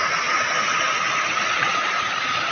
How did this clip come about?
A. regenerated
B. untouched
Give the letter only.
B